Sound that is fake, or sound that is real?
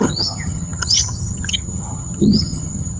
fake